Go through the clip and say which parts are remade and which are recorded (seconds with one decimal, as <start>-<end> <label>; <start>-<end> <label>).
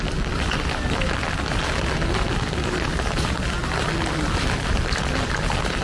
0.0-5.8 recorded